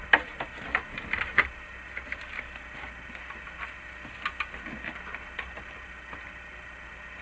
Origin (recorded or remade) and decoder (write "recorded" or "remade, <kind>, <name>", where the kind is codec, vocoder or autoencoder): recorded